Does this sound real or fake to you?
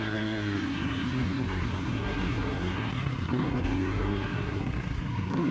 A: fake